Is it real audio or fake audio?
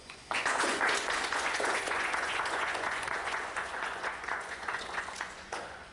fake